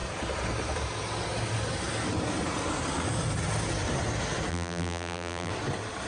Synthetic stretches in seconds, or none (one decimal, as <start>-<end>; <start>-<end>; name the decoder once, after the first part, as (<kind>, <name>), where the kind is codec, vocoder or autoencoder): 4.5-5.5 (vocoder, BigVGAN v2)

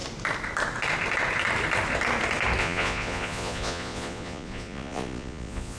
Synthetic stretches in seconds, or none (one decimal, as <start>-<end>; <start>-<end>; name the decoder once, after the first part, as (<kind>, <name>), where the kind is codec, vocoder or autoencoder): 2.6-5.8 (vocoder, Vocos)

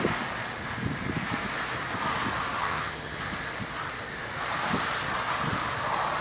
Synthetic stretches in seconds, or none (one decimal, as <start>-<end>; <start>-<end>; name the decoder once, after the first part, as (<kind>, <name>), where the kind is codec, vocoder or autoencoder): 2.6-3.2 (vocoder, HiFi-GAN)

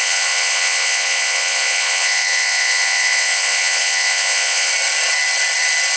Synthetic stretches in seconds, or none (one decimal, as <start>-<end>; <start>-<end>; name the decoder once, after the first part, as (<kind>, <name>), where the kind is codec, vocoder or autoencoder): 0.0-4.7 (vocoder, Vocos)

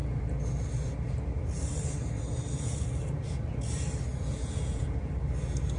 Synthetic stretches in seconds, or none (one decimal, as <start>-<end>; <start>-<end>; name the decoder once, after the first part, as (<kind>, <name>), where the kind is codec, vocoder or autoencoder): 4.1-5.1 (vocoder, Vocos)